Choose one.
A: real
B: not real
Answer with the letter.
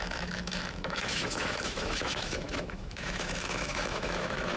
B